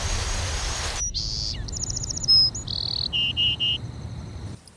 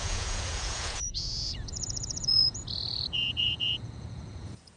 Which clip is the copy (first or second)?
second